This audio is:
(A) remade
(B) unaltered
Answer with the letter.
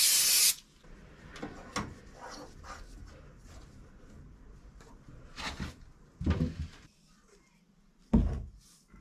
B